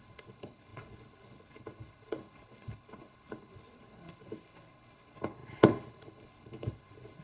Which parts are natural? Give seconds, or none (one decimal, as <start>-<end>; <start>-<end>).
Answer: none